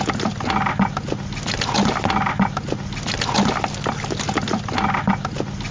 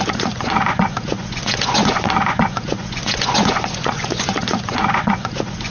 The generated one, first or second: second